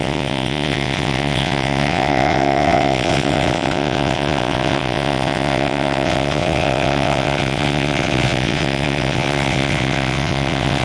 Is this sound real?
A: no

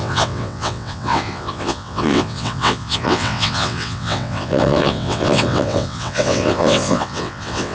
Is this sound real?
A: no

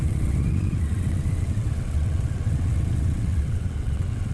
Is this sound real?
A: no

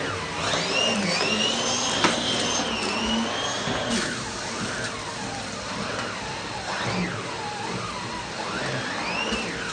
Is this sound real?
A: yes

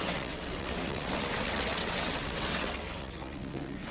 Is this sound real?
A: no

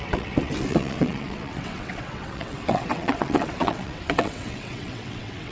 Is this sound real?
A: no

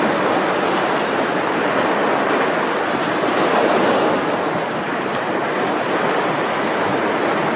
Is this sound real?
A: yes